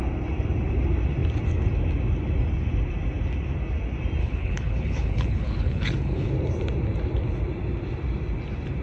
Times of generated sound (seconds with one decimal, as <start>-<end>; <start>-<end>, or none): 4.2-6.3